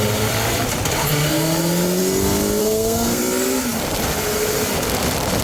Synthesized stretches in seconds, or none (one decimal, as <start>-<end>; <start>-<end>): 2.6-3.2